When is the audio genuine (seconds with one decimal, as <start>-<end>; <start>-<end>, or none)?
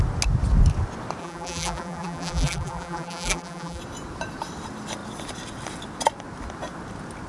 0.0-1.2; 3.8-7.3